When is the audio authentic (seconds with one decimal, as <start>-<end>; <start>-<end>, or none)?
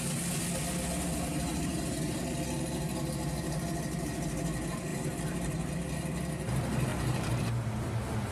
0.0-1.3; 2.2-4.9; 5.7-6.9; 7.4-8.3